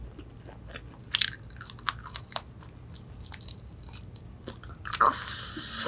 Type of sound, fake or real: real